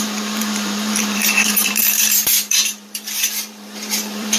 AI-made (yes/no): yes